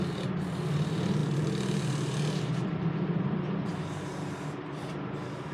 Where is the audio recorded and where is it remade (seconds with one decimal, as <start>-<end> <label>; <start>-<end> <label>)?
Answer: 0.0-1.2 recorded; 1.2-4.4 remade; 4.4-5.5 recorded